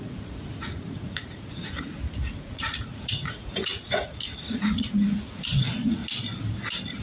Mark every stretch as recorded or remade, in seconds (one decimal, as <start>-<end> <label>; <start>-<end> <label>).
0.0-6.0 remade; 6.0-7.0 recorded